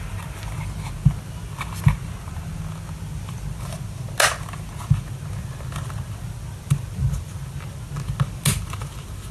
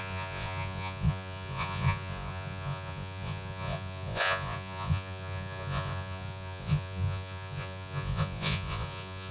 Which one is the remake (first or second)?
second